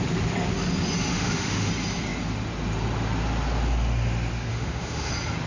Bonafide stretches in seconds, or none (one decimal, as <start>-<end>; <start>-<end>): 0.0-1.1; 1.7-4.5; 5.1-5.5